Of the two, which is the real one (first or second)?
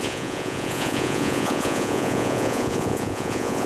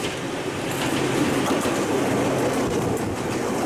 second